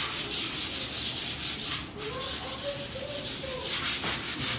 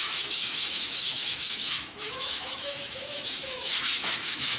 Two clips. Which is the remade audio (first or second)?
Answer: second